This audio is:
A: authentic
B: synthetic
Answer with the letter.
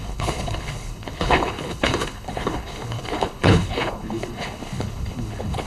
B